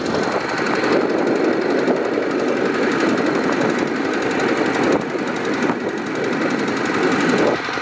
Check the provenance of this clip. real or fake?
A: real